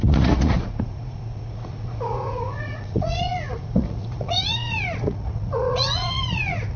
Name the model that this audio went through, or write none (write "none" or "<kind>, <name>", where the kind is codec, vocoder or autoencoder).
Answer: vocoder, Vocos